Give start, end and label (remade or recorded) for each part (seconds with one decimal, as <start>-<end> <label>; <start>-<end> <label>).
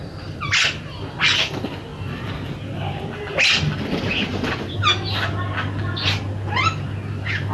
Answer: 0.0-7.5 recorded